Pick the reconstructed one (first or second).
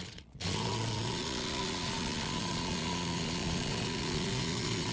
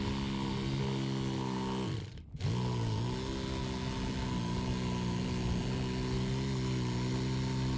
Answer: first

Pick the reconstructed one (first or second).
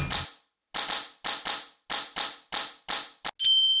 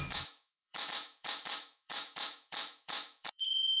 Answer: second